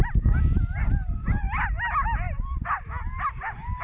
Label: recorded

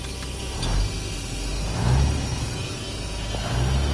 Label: recorded